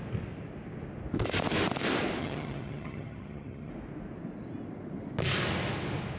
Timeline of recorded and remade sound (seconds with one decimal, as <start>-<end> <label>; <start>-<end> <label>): 0.0-2.2 recorded; 2.2-3.7 remade; 3.7-6.2 recorded